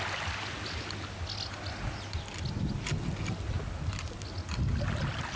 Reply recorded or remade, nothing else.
recorded